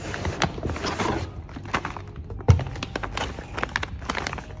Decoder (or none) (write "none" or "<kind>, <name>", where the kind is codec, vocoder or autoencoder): none